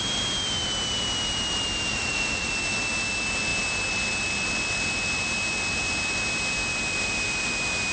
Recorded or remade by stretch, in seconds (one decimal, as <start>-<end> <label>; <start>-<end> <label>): 0.0-1.9 recorded; 1.9-2.5 remade; 2.5-7.9 recorded

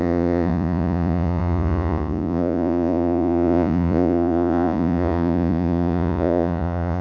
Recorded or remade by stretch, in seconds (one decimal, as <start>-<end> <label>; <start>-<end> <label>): 0.0-7.0 remade

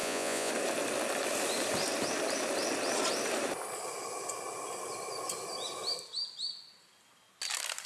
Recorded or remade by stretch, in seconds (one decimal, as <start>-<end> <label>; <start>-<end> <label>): 0.0-0.5 remade; 0.5-7.9 recorded

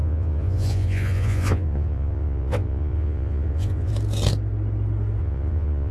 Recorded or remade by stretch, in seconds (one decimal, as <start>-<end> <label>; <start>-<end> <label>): 0.0-3.9 remade; 3.9-5.2 recorded; 5.2-5.9 remade

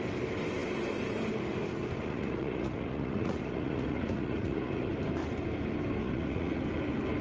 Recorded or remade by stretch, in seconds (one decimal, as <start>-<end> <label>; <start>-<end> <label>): 0.0-2.0 recorded; 2.0-4.9 remade; 4.9-6.0 recorded; 6.0-6.6 remade; 6.6-7.2 recorded

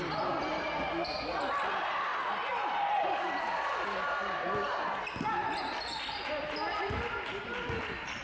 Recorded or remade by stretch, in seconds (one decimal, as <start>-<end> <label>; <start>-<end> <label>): 0.0-8.2 recorded